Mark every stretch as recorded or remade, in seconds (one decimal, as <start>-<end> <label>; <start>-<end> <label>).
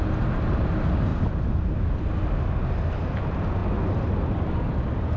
0.0-1.1 recorded; 1.1-1.7 remade; 1.7-3.6 recorded; 3.6-5.2 remade